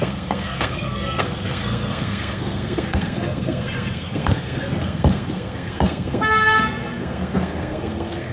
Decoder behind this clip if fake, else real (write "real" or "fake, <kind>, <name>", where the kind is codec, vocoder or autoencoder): fake, codec, SNAC